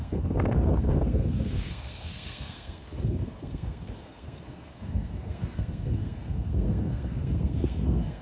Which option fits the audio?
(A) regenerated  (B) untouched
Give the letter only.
A